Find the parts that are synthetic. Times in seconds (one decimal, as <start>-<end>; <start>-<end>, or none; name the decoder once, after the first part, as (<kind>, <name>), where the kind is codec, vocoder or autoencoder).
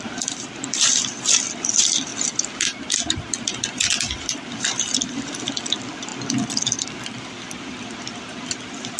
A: 0.0-2.1 (vocoder, BigVGAN v2); 4.5-6.1; 6.9-9.0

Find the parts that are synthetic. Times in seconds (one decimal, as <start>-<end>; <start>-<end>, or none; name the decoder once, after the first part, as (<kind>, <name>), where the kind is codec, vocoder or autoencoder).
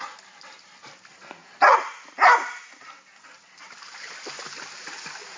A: none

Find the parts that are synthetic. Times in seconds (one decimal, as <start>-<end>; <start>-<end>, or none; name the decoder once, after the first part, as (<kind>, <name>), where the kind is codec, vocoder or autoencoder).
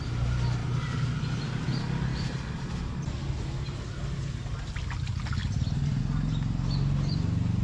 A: 2.1-2.7 (vocoder, BigVGAN v2); 5.4-6.0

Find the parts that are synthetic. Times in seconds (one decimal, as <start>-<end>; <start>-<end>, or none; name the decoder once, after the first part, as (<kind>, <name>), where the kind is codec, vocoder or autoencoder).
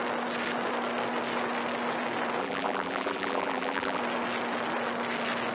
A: 2.4-4.0 (vocoder, BigVGAN v2)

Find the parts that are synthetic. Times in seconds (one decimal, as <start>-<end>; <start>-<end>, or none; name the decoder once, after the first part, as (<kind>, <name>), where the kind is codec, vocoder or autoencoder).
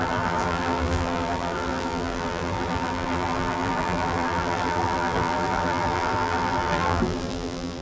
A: 0.0-7.8 (vocoder, BigVGAN v2)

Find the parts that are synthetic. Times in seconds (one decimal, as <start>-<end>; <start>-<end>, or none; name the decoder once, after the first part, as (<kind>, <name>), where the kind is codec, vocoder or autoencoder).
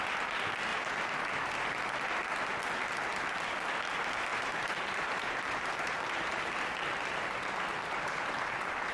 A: 0.7-1.3 (vocoder, BigVGAN v2); 4.3-6.4; 7.7-8.9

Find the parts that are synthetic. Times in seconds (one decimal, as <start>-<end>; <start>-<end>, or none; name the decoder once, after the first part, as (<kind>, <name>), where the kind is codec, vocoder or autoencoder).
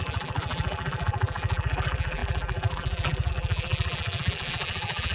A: 0.0-5.1 (vocoder, BigVGAN v2)